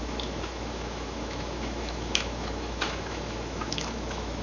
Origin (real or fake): fake